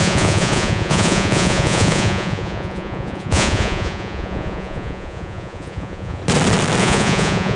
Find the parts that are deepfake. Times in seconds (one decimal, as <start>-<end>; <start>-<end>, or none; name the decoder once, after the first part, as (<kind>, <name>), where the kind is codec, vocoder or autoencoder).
0.0-6.2 (vocoder, Vocos); 6.8-7.6